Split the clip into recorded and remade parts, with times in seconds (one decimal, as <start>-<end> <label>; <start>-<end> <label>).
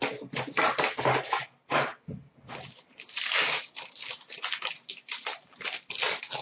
0.0-6.4 recorded